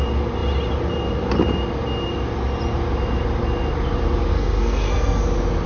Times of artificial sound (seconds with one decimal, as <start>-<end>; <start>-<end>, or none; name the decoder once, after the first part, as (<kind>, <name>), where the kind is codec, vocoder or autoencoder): 4.3-5.2 (codec, SNAC)